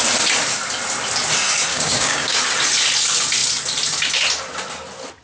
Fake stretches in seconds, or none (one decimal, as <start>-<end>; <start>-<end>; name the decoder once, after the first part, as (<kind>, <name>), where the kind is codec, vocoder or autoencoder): 1.7-2.4 (codec, DAC)